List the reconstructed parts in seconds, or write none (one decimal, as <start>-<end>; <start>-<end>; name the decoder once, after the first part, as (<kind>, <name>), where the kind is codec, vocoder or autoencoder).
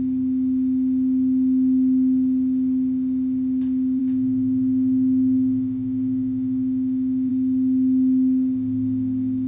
4.0-7.3 (autoencoder, DAC-VAE)